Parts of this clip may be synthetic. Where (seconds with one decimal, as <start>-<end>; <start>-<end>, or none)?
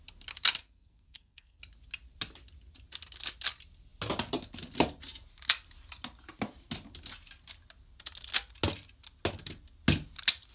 0.6-1.6